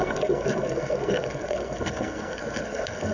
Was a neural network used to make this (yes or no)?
yes